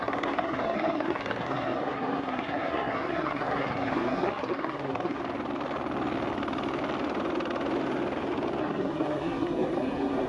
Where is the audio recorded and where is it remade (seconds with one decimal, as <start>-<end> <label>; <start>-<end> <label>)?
0.0-5.2 remade; 5.2-8.6 recorded; 8.6-10.3 remade